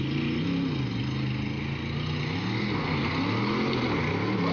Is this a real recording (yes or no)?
yes